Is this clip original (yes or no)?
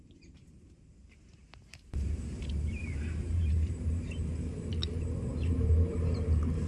no